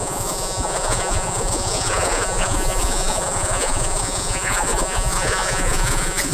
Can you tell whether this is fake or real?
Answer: fake